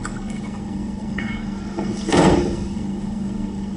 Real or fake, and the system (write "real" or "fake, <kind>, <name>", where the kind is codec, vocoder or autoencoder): fake, codec, SNAC